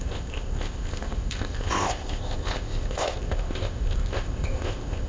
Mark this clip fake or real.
fake